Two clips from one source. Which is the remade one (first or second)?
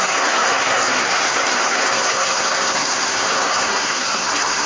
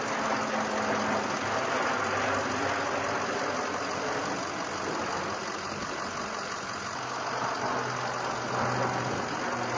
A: first